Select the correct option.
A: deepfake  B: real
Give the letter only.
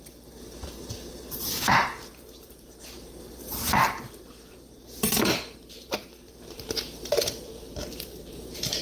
A